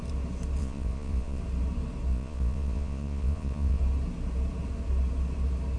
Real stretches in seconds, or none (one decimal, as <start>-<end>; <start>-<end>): 0.0-0.6; 1.4-2.1; 3.8-5.8